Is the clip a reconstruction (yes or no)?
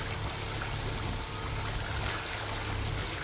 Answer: no